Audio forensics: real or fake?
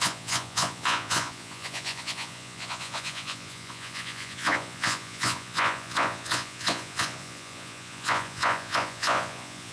fake